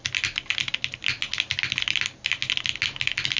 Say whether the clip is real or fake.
real